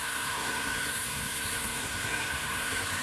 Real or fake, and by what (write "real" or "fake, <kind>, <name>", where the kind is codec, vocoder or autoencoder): fake, codec, SNAC